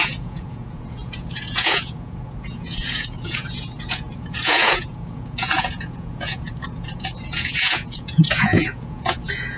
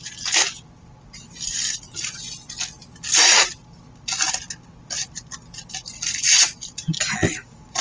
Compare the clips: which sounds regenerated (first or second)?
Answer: first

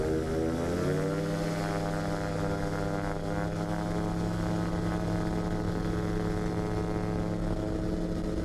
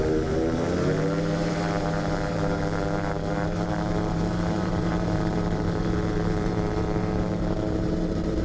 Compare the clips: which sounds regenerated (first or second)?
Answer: second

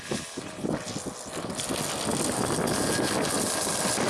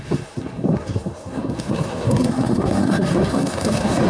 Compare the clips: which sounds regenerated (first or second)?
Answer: second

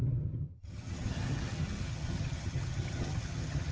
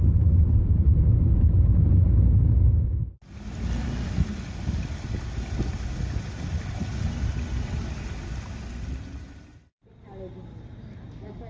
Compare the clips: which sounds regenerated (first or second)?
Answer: first